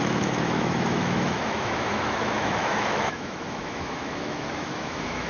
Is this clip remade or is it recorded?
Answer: remade